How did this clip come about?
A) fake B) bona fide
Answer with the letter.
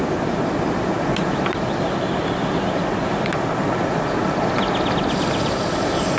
B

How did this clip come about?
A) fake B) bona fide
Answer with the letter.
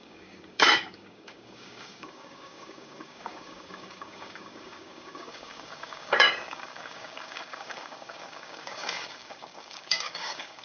A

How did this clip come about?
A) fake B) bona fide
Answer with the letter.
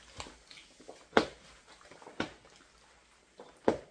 B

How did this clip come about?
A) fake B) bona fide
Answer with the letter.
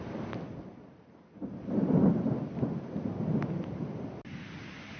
B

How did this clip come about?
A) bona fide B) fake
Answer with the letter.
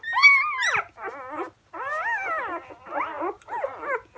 A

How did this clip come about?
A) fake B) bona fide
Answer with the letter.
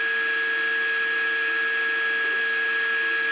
B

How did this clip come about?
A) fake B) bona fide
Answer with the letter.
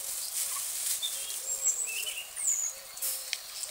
B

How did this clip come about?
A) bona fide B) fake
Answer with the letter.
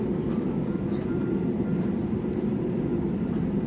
A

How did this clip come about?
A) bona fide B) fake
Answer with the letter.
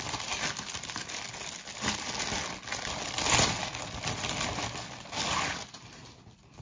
A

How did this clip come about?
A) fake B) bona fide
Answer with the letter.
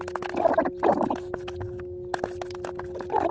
B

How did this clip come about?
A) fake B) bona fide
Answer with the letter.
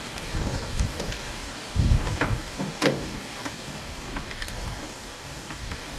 A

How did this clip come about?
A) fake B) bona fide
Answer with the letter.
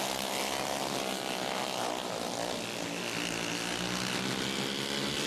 B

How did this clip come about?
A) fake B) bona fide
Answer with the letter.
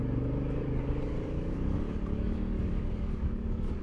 A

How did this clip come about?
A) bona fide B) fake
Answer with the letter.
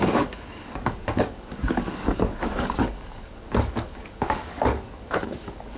B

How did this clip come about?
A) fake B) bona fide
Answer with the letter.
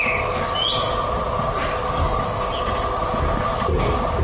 B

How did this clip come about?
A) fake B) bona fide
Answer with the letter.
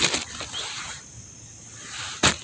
B